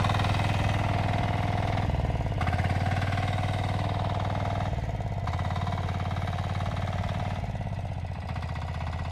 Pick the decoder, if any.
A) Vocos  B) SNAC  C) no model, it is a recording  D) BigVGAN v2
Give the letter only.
C